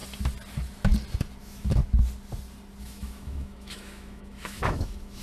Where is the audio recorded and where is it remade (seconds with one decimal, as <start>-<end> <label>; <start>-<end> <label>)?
0.0-1.4 recorded; 1.4-1.8 remade; 1.8-2.8 recorded; 2.8-5.2 remade